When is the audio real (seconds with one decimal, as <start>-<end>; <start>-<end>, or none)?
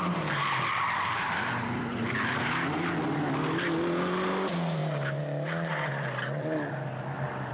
0.7-4.8; 5.9-7.5